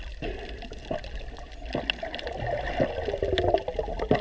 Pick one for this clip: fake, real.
real